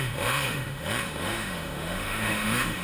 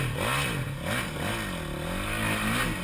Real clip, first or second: second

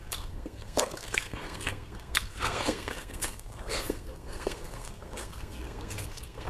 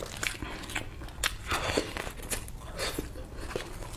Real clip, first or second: second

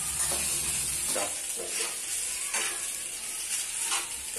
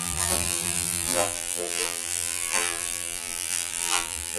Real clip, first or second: first